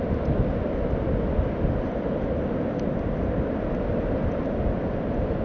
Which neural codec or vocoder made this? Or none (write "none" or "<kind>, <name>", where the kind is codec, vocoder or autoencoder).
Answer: none